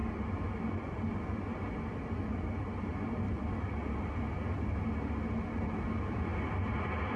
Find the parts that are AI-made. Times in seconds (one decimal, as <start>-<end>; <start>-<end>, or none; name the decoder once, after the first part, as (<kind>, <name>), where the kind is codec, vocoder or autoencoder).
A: none